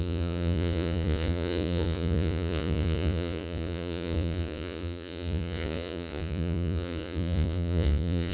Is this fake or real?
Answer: fake